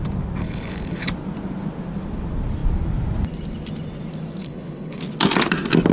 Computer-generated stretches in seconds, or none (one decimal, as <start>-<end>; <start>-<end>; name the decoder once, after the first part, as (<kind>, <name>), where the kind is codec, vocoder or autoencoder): 0.4-1.1 (codec, HILCodec); 4.4-5.0